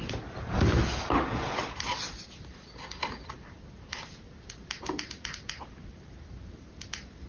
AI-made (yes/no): no